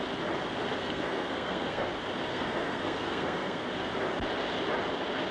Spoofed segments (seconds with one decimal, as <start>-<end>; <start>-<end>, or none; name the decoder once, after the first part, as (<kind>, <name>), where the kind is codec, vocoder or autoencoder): 0.8-1.9 (codec, SNAC); 2.3-3.7